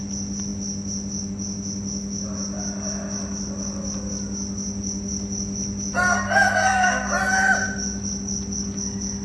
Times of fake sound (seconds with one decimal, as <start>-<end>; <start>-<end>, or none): 6.1-7.1